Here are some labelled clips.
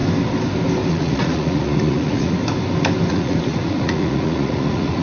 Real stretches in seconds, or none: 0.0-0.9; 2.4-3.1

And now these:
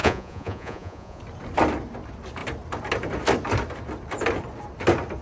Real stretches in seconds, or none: 1.2-5.2

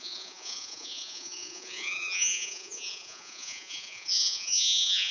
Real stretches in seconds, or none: none

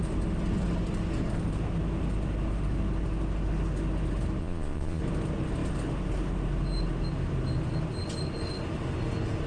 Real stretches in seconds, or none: 0.0-4.4; 5.0-9.5

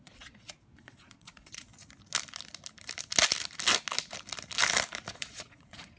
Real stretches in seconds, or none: 1.7-5.1

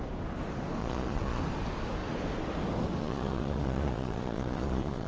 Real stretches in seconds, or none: 0.0-0.8; 1.4-3.0

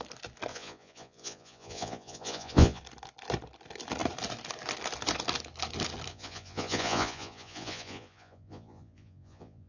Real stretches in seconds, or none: 0.0-0.5; 2.8-6.1